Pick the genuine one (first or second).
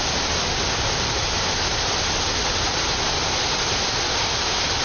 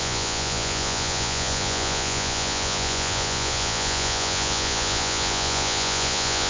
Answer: first